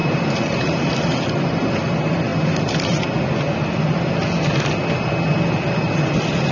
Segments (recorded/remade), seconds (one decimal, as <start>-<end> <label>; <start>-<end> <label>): 0.0-1.7 remade; 1.7-6.5 recorded